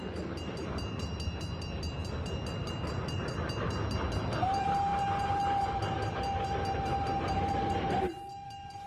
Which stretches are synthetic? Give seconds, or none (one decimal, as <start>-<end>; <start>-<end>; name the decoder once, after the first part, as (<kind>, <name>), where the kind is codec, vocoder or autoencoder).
none